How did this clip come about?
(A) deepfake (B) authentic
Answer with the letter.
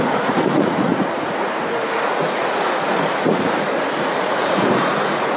A